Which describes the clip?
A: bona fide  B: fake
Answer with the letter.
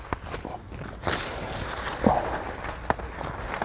A